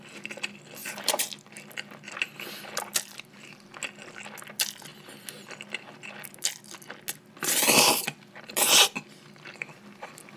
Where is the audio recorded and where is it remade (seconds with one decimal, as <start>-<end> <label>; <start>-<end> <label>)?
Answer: 0.0-0.8 recorded; 0.8-1.3 remade; 1.3-2.9 recorded; 2.9-3.7 remade; 3.7-10.4 recorded